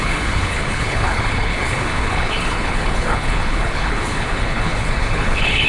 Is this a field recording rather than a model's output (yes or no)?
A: no